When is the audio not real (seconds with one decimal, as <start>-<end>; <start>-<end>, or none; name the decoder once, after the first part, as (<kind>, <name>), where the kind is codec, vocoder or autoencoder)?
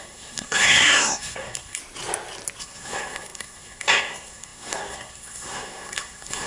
0.0-1.8 (codec, SNAC); 2.6-6.5